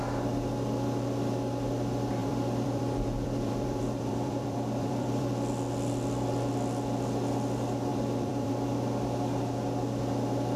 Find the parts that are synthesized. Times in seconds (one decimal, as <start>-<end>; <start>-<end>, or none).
2.2-5.3; 7.9-8.5